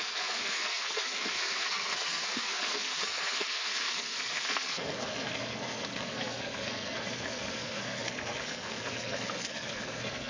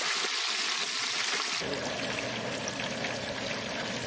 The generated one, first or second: first